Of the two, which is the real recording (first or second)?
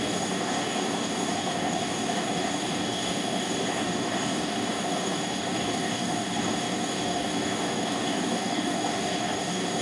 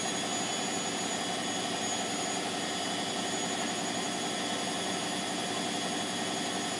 second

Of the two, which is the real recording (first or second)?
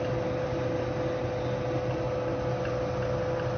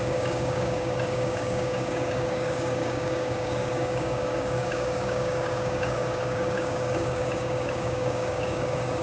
first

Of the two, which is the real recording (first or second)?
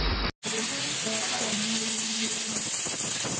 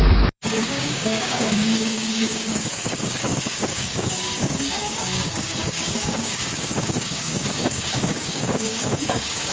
first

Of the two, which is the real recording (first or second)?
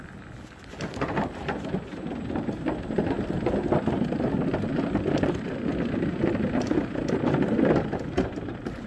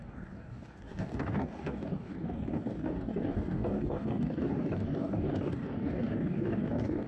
first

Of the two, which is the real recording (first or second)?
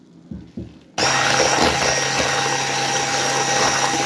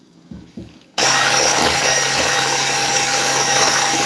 first